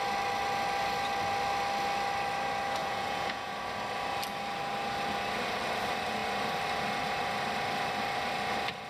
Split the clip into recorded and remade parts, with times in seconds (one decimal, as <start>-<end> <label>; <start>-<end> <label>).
0.0-2.8 recorded; 2.8-3.5 remade; 3.5-8.9 recorded